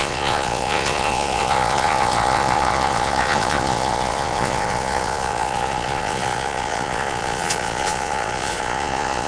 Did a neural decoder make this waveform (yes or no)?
yes